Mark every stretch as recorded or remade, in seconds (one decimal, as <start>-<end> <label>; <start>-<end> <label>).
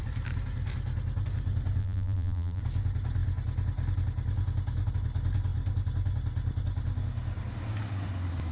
0.0-1.8 recorded; 1.8-2.6 remade; 2.6-8.5 recorded